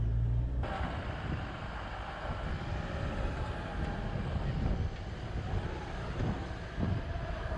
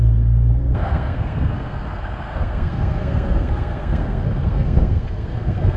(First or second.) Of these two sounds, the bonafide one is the first